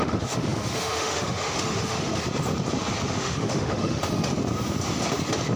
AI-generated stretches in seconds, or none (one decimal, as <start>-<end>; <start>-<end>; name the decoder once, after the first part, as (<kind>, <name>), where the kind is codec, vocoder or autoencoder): 0.0-2.1 (autoencoder, DAC-VAE); 3.1-4.3